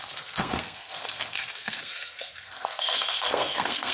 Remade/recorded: remade